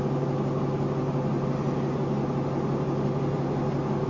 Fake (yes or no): no